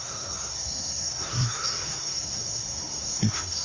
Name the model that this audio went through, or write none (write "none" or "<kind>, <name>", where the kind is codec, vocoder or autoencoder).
codec, SNAC